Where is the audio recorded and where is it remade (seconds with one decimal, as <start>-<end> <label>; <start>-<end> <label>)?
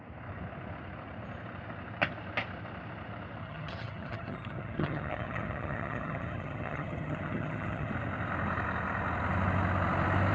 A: 0.0-3.4 recorded; 3.4-7.9 remade; 7.9-10.3 recorded